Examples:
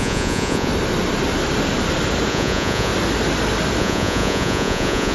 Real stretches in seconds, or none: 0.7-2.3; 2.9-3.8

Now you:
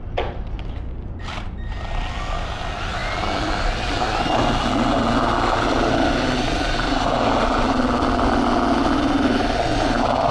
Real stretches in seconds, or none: 0.0-10.3